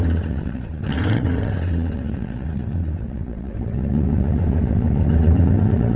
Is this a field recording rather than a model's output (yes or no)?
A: no